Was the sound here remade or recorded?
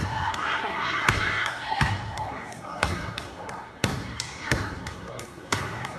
remade